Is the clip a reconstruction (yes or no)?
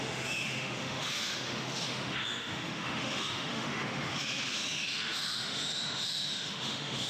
yes